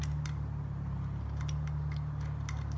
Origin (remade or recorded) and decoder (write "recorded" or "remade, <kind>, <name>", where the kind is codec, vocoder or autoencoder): recorded